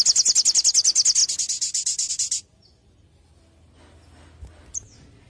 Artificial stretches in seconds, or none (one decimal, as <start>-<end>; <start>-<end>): none